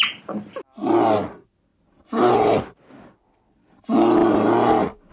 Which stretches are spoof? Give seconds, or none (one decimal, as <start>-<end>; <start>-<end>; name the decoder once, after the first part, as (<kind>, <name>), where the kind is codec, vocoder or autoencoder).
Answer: none